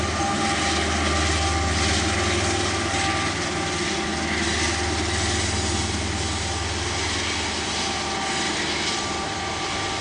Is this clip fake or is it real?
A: real